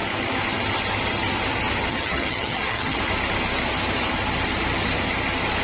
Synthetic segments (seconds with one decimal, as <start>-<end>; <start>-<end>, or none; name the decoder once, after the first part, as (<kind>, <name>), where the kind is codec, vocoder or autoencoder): 1.9-3.0 (vocoder, HiFi-GAN)